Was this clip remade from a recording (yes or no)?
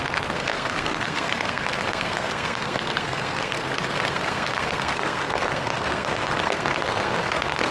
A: yes